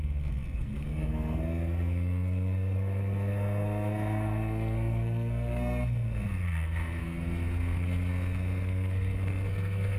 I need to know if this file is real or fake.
fake